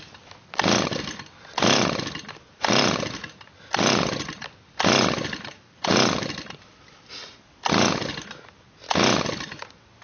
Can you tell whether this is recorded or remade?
recorded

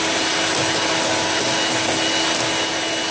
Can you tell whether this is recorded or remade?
recorded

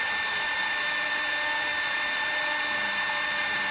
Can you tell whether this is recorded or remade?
remade